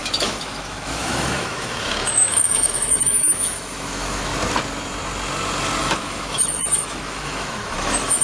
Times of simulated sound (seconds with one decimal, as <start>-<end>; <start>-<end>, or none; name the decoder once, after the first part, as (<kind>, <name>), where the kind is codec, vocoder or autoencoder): 0.0-4.3 (autoencoder, DAC-VAE); 5.8-8.2